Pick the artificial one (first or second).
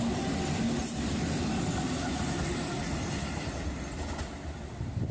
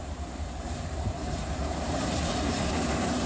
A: second